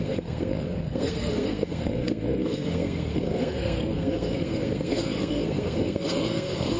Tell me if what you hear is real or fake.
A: fake